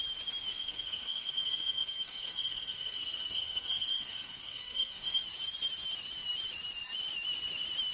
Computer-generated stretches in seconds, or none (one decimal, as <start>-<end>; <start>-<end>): 0.5-5.2